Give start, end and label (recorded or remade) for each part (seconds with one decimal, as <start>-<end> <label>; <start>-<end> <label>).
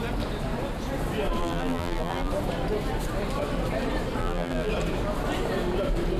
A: 0.0-1.4 recorded; 1.4-2.3 remade; 2.3-4.2 recorded; 4.2-4.7 remade; 4.7-6.2 recorded